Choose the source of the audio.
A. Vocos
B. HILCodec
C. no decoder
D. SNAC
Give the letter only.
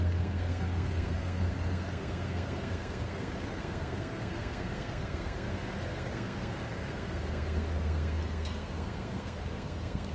D